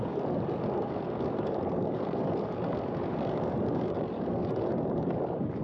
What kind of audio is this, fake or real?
fake